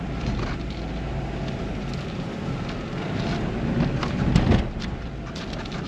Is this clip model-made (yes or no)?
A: no